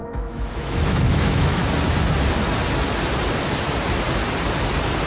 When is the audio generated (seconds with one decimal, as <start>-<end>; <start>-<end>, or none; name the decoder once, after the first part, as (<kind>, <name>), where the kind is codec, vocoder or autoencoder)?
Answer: 0.0-1.6 (autoencoder, DAC-VAE)